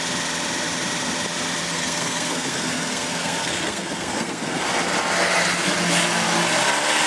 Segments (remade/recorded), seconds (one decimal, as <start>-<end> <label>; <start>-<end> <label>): 0.0-1.6 recorded; 1.6-4.7 remade; 4.7-7.1 recorded